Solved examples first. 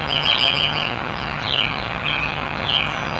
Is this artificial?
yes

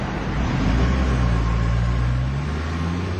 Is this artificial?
no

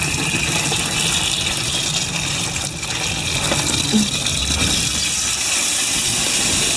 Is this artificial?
no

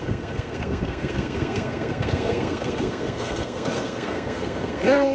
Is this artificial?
yes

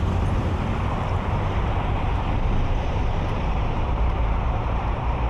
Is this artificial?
yes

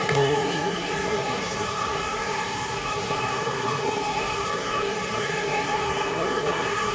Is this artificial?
yes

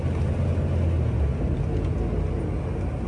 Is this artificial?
no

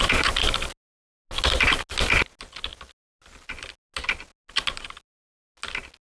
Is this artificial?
no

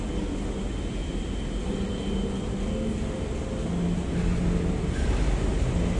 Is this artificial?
no